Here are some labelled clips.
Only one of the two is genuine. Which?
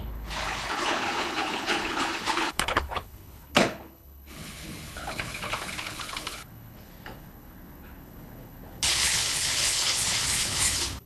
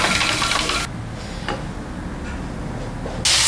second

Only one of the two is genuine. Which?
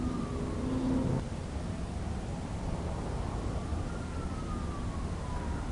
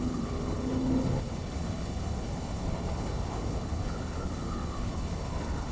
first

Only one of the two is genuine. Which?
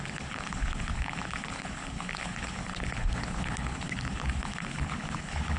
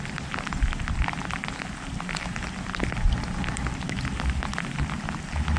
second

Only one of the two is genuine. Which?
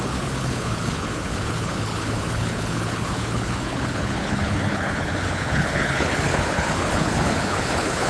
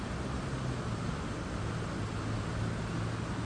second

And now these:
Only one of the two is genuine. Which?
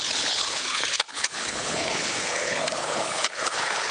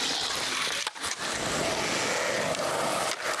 second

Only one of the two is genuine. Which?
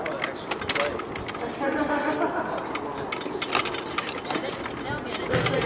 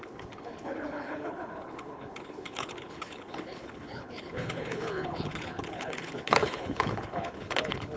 first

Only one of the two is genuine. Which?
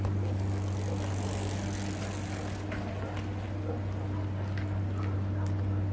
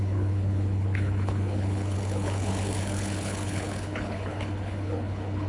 first